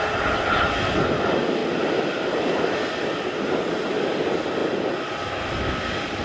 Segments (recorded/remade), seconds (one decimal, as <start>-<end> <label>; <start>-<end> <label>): 0.0-6.2 recorded